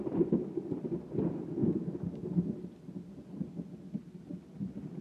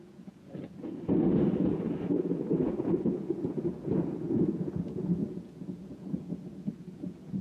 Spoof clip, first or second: second